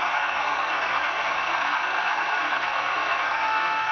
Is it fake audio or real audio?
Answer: fake